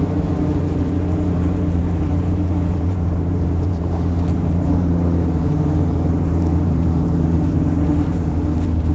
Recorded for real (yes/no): no